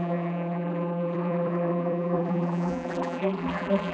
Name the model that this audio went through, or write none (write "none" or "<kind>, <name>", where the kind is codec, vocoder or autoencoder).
vocoder, BigVGAN v2